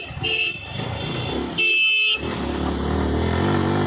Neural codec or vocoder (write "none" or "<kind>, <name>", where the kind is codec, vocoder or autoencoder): none